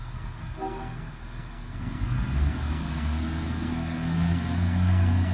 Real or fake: fake